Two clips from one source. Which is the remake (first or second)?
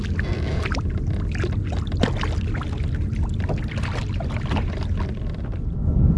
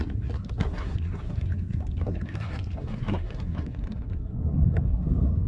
second